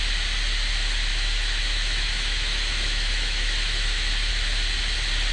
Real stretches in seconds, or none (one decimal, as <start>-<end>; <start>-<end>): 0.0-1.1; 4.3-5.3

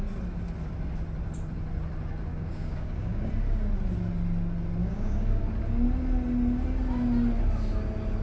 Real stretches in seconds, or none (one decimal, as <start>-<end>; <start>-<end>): 0.0-2.3; 3.3-4.8; 5.4-8.2

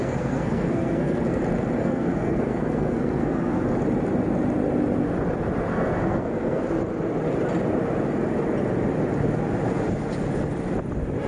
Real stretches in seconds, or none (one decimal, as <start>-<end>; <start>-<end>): 1.4-1.8; 3.6-5.7; 6.6-11.3

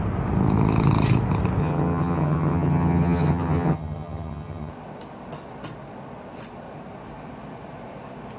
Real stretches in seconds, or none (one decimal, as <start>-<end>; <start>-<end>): 0.0-1.6; 4.7-8.4

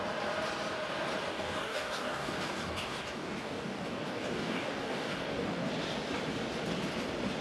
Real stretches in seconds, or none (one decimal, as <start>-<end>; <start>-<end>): 0.0-1.3; 5.7-7.4